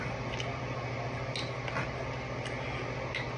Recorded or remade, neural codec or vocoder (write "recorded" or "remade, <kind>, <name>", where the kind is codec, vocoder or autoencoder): recorded